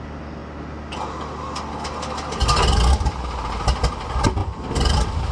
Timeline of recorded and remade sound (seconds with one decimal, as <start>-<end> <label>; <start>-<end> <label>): 0.0-4.4 recorded; 4.4-5.3 remade